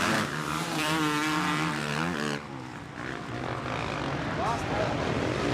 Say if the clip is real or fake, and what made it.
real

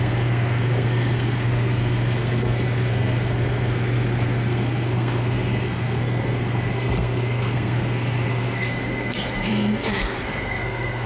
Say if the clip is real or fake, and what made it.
fake, codec, SNAC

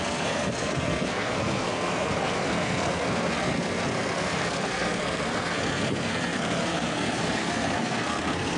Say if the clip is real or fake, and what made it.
fake, codec, SNAC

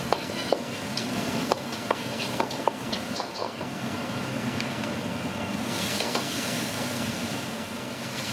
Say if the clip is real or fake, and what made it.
fake, codec, SNAC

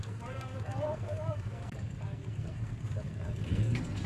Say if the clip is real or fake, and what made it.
fake, codec, SNAC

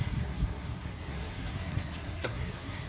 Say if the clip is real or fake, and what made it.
fake, codec, SNAC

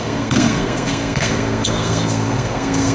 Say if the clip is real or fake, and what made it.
fake, codec, SNAC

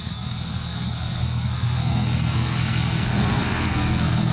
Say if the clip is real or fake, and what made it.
fake, codec, SNAC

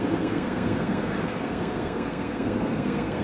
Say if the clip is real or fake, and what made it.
fake, codec, SNAC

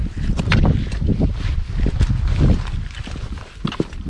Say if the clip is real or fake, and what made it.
real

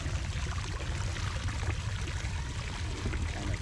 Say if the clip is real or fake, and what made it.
real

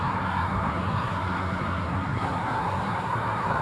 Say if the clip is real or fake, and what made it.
fake, codec, SNAC